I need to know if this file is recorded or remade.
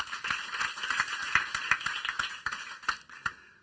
recorded